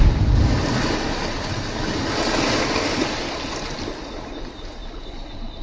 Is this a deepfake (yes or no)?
no